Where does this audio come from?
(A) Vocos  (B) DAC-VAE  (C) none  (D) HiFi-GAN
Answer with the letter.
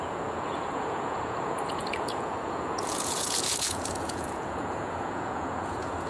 A